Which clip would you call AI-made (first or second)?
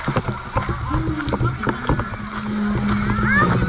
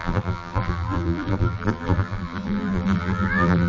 second